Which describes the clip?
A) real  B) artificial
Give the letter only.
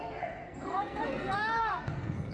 B